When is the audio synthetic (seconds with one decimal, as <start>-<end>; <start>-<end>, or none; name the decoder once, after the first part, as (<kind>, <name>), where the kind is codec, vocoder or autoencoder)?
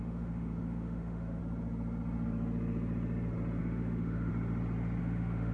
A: 0.0-1.4 (autoencoder, DAC-VAE); 3.6-4.3; 5.0-5.5